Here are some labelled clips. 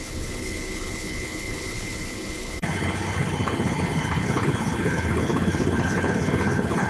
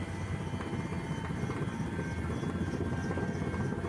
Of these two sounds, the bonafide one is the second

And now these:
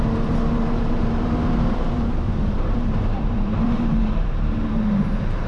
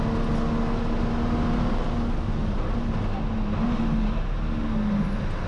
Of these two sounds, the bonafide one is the second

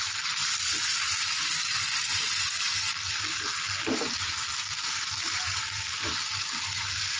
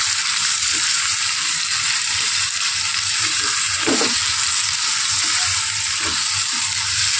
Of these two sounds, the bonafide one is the first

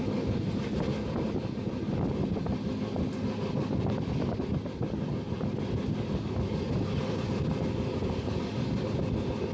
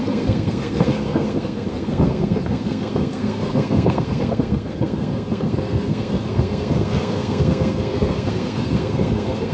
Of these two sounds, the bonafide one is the first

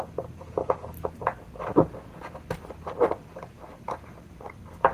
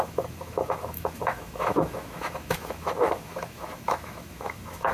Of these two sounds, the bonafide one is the first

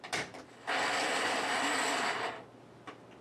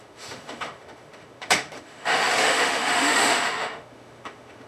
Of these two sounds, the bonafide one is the first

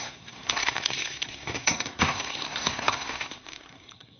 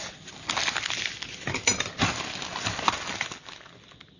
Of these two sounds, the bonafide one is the second